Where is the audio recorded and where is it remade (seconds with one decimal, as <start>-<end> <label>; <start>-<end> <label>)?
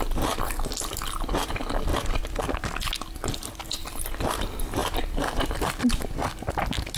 0.0-7.0 recorded